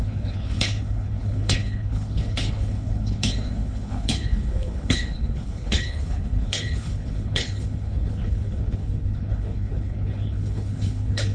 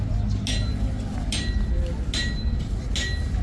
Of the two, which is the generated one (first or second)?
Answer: first